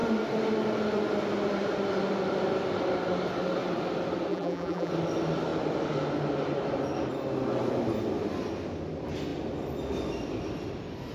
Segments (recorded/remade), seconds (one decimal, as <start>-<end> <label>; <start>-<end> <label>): 0.0-4.3 recorded; 4.3-4.9 remade; 4.9-11.1 recorded